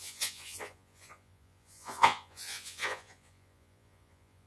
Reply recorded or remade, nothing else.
remade